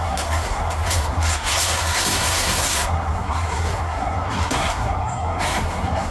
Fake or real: fake